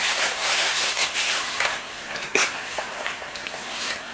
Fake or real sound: fake